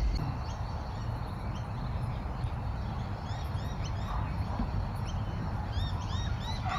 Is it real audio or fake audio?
real